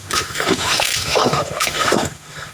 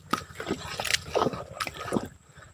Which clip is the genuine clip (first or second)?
second